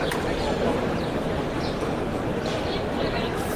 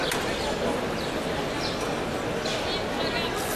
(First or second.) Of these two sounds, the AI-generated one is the first